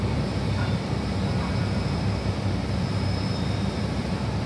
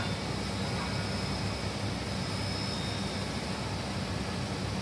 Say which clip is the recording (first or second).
second